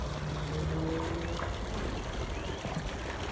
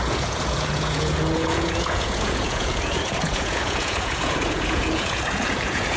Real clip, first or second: first